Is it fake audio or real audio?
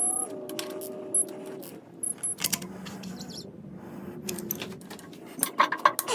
real